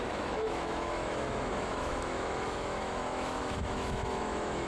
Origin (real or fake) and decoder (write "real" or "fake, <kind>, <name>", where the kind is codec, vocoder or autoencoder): fake, autoencoder, DAC-VAE